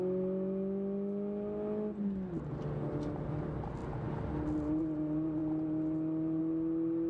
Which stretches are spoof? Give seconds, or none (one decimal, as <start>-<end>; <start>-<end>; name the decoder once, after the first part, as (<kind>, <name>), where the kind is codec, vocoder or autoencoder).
5.4-6.4 (vocoder, BigVGAN v2)